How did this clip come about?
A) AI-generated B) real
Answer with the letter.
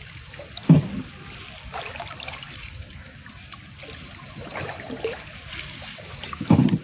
B